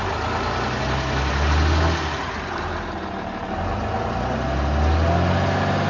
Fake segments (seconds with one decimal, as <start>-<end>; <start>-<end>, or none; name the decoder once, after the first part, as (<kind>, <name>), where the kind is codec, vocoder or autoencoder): none